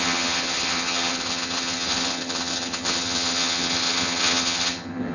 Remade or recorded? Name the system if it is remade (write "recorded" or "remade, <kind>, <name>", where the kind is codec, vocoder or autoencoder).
remade, vocoder, HiFi-GAN